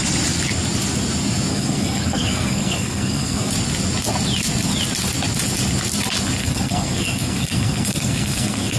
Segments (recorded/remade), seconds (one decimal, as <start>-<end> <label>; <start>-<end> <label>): 0.0-1.5 recorded; 1.5-3.5 remade; 3.5-6.4 recorded; 6.4-8.8 remade